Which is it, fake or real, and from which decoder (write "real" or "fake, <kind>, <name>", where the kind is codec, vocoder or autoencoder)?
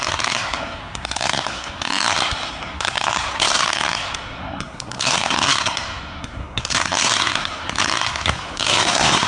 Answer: fake, codec, SNAC